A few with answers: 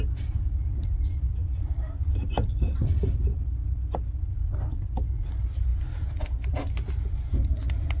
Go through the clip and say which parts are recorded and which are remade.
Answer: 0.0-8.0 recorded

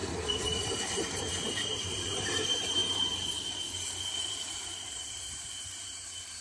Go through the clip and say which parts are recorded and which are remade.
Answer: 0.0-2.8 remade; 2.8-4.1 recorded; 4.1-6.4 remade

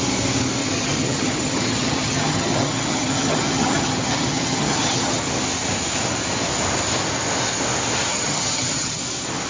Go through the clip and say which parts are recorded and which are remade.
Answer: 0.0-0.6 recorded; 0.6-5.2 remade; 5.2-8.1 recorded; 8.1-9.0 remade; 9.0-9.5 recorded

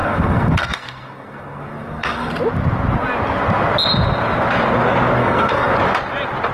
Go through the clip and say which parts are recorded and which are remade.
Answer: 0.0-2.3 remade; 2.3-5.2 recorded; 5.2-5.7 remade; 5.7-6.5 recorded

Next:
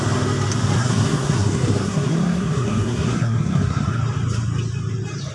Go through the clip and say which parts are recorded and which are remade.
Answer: 0.0-0.8 recorded; 0.8-4.0 remade; 4.0-5.3 recorded